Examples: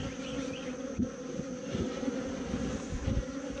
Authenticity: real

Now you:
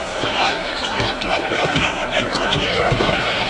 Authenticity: fake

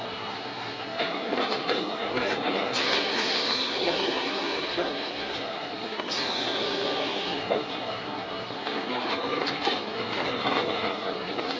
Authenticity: fake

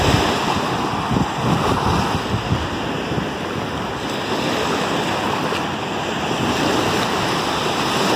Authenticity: real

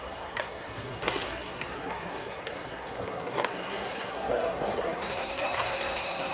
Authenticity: fake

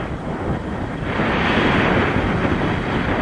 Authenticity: real